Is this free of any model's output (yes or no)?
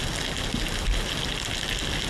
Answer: yes